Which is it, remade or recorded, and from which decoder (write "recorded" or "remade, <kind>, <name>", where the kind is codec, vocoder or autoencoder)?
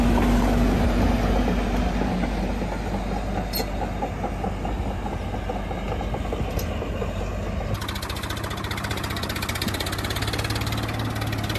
recorded